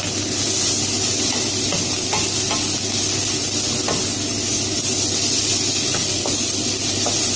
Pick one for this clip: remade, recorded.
recorded